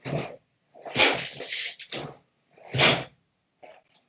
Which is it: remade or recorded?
recorded